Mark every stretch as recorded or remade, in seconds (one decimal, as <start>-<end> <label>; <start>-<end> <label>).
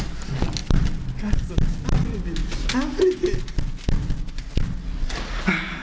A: 0.0-0.6 recorded; 0.6-1.5 remade; 1.5-5.8 recorded